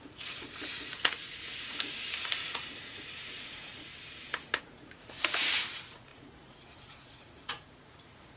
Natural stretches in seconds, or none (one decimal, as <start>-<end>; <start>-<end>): 3.9-4.6